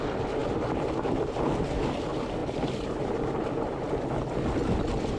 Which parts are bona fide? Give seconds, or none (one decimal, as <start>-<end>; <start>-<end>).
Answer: 0.0-2.4; 3.8-5.2